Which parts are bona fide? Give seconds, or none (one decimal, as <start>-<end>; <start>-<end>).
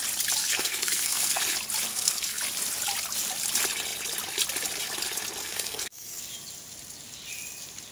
0.0-0.4; 1.4-1.9; 2.4-5.4; 6.2-7.9